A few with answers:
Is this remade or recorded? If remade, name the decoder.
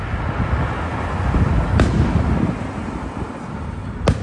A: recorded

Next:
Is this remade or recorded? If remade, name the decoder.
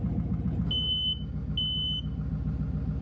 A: recorded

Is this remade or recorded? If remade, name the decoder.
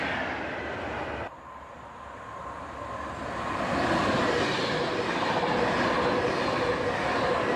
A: recorded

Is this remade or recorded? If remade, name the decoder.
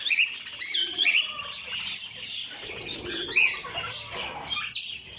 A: recorded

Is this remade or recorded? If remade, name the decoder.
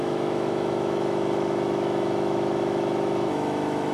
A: remade, autoencoder, DAC-VAE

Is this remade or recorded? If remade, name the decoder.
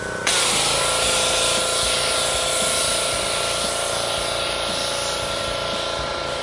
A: recorded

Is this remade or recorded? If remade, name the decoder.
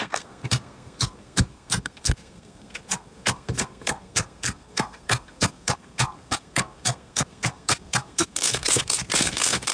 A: remade, codec, SNAC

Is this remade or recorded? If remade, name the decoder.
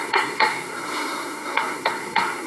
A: remade, codec, SNAC